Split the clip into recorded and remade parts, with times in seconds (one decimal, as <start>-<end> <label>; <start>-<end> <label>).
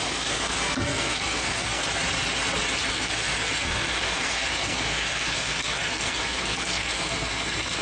0.0-1.8 remade; 1.8-2.9 recorded; 2.9-7.8 remade